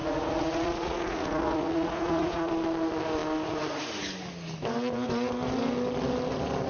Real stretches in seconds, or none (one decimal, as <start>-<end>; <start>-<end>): 2.5-6.7